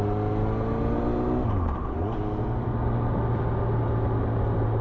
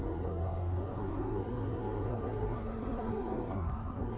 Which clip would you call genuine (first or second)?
first